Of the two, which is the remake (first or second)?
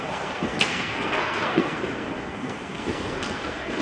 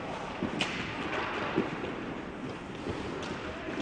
first